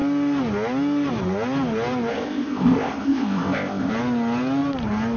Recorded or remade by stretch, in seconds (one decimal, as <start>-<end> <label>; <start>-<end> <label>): 0.0-2.1 recorded; 2.1-3.9 remade; 3.9-5.2 recorded